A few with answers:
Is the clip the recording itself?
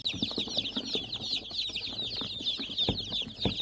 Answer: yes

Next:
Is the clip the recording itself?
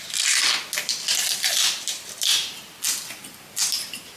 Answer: yes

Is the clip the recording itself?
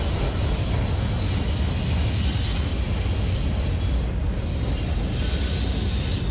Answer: yes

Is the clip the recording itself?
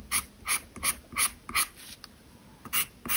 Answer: yes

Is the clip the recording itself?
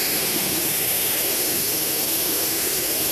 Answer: no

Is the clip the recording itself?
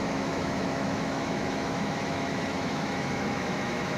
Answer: no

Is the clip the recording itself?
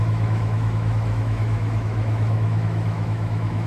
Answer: no